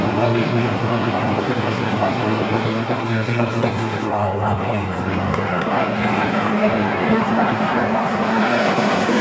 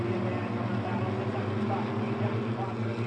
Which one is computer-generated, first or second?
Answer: first